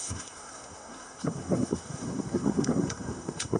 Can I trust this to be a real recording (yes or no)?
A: no